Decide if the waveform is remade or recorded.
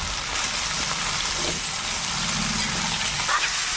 recorded